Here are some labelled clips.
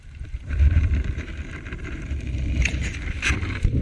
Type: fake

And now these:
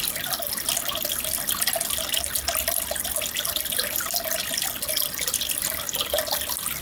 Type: real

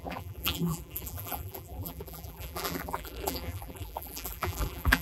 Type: fake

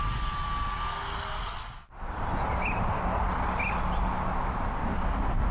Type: real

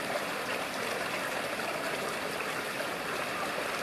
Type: fake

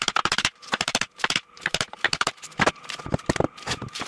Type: fake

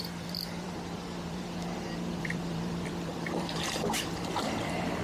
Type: fake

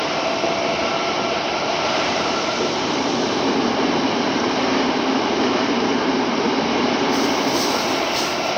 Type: fake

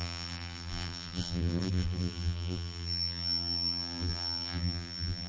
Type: fake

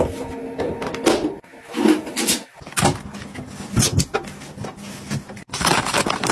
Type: real